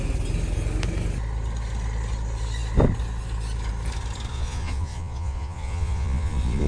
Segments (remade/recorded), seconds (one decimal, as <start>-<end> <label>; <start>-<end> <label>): 0.0-4.3 recorded; 4.3-6.7 remade